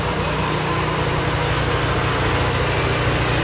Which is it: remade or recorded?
recorded